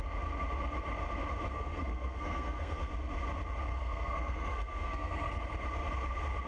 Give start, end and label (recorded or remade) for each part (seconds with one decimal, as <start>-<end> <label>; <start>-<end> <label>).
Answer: 0.0-1.5 recorded; 1.5-2.9 remade; 2.9-3.7 recorded; 3.7-5.4 remade; 5.4-6.5 recorded